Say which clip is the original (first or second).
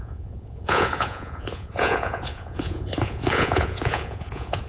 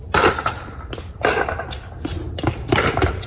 second